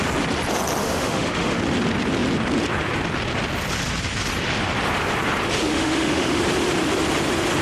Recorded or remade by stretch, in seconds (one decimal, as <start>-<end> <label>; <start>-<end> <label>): 0.0-0.8 recorded; 0.8-1.6 remade; 1.6-5.7 recorded; 5.7-6.4 remade; 6.4-7.6 recorded